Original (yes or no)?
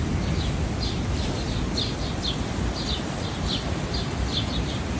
yes